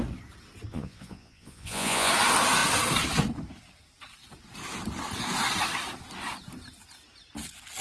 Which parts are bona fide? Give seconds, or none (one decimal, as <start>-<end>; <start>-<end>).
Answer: 0.0-0.7; 2.1-7.8